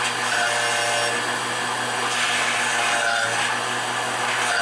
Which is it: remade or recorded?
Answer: recorded